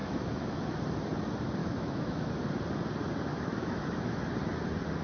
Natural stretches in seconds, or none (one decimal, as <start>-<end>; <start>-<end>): 0.8-1.6; 2.3-3.3; 4.3-5.0